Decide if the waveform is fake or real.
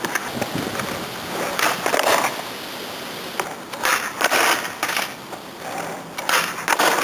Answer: real